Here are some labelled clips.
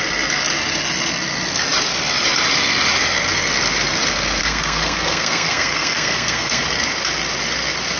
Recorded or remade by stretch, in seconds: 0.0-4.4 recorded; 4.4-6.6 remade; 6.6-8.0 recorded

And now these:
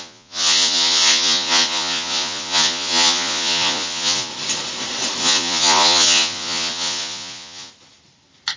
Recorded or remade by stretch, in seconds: 0.0-4.3 remade; 4.3-5.2 recorded; 5.2-7.7 remade; 7.7-8.6 recorded

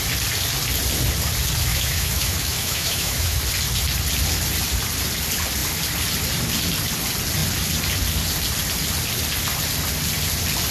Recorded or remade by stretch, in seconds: 0.0-1.7 recorded; 1.7-3.4 remade; 3.4-10.7 recorded

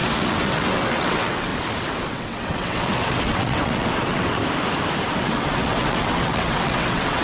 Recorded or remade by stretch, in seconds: 0.0-1.5 remade; 1.5-2.1 recorded; 2.1-4.4 remade; 4.4-5.2 recorded; 5.2-7.2 remade